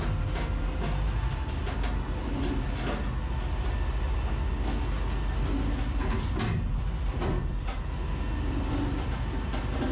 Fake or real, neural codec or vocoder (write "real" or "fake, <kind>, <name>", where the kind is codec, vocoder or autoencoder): real